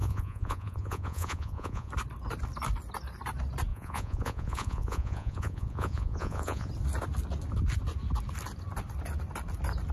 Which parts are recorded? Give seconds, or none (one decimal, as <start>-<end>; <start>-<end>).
1.9-3.7; 6.7-9.9